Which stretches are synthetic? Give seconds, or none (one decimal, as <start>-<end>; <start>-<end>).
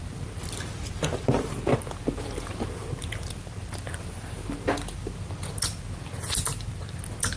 none